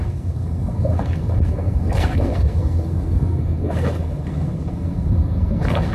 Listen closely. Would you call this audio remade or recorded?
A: remade